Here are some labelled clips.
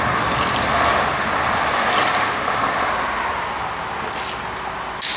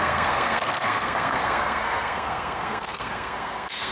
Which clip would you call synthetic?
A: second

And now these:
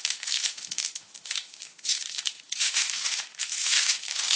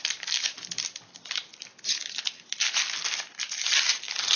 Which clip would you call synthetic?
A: first